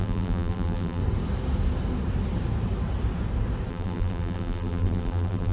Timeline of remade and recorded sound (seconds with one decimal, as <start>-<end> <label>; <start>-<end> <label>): 0.0-1.0 remade; 1.0-3.7 recorded; 3.7-5.5 remade